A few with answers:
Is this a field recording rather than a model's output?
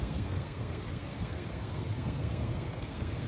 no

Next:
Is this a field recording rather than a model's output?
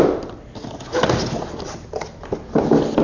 yes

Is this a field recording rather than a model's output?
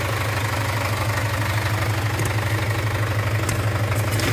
yes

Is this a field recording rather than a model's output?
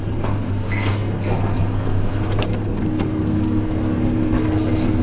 no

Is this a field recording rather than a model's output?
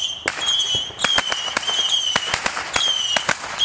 yes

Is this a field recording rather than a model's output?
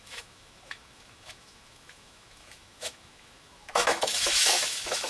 no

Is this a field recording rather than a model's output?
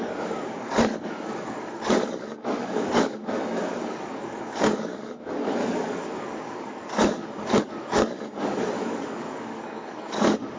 no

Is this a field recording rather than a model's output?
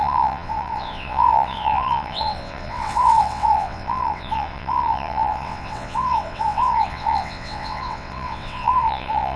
no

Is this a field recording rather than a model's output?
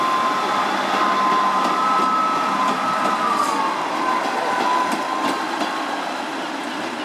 yes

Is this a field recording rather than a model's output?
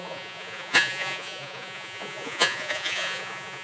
no